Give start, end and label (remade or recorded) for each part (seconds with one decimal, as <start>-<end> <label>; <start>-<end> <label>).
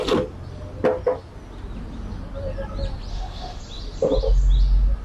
0.0-3.1 recorded; 3.1-3.6 remade; 3.6-5.0 recorded